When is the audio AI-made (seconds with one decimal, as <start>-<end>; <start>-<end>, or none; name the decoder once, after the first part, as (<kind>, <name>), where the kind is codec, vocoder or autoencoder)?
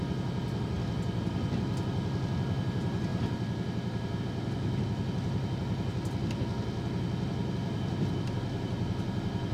none